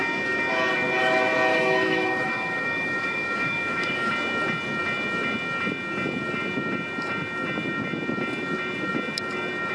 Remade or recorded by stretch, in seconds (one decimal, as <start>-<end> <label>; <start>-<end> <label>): 0.0-1.5 recorded; 1.5-4.1 remade; 4.1-9.7 recorded